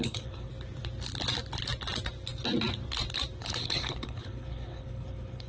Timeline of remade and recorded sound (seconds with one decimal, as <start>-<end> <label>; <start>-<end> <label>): 0.0-0.5 remade; 0.5-3.4 recorded; 3.4-5.5 remade